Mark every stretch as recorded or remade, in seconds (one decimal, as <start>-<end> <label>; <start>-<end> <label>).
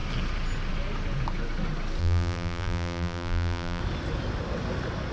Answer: 0.0-2.0 recorded; 2.0-3.8 remade; 3.8-5.1 recorded